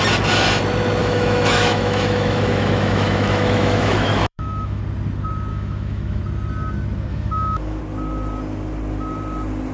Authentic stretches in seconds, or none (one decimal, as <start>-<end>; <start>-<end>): 0.0-1.0; 4.8-5.5; 6.2-7.1; 7.8-9.7